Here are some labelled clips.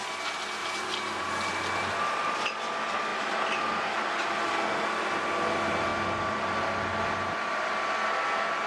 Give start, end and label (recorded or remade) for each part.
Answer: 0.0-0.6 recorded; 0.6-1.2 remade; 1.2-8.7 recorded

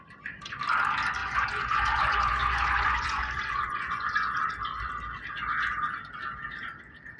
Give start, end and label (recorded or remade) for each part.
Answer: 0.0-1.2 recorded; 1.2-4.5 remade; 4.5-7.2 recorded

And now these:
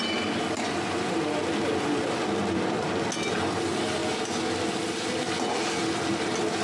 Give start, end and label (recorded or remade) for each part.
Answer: 0.0-6.6 recorded

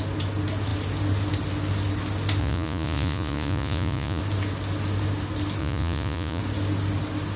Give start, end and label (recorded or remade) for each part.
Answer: 0.0-2.4 recorded; 2.4-4.2 remade; 4.2-5.6 recorded; 5.6-6.4 remade; 6.4-7.4 recorded

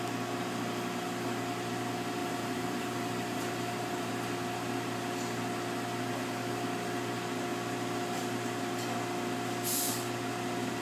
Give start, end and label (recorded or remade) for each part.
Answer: 0.0-2.2 recorded; 2.2-4.1 remade; 4.1-10.8 recorded

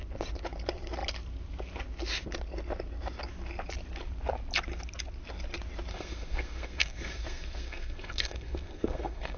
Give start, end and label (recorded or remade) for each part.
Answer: 0.0-5.9 recorded; 5.9-9.4 remade

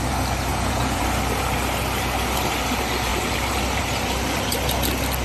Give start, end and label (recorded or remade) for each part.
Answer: 0.0-0.5 recorded; 0.5-1.0 remade; 1.0-5.2 recorded